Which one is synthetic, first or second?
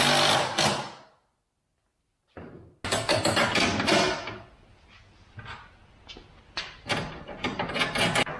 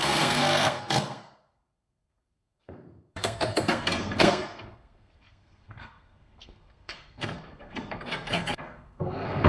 second